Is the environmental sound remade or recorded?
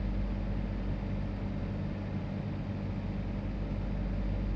recorded